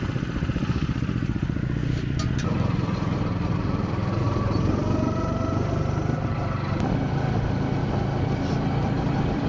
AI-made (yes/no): no